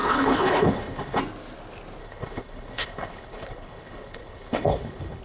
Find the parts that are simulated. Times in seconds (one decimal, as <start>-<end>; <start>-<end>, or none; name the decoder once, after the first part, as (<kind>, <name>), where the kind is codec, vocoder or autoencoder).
0.0-1.2 (codec, HILCodec); 2.0-5.2